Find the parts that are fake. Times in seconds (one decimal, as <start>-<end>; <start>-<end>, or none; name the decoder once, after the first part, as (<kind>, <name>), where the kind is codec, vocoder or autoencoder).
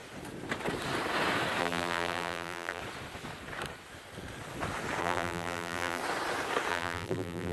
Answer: 1.6-2.8 (vocoder, BigVGAN v2); 5.0-6.0; 6.7-7.5